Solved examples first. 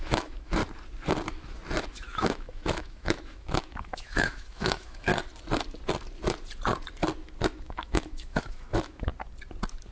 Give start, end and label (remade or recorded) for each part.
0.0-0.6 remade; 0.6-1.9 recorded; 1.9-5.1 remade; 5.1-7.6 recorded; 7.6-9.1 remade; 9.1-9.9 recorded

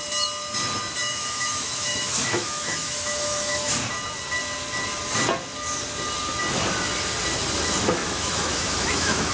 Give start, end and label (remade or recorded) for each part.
0.0-1.0 recorded; 1.0-3.7 remade; 3.7-8.0 recorded; 8.0-9.3 remade